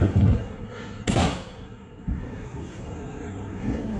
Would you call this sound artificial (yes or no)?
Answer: yes